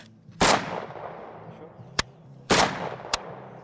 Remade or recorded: remade